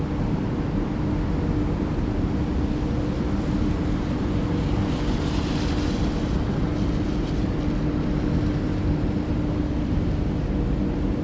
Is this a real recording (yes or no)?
yes